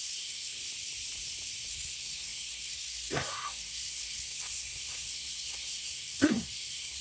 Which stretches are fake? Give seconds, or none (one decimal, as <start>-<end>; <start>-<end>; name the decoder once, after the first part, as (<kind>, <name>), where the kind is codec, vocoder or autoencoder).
0.0-0.6 (codec, SNAC); 1.7-7.0